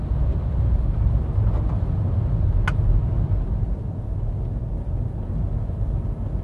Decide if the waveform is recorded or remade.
recorded